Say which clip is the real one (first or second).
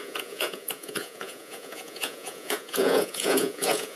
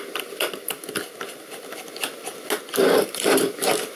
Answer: second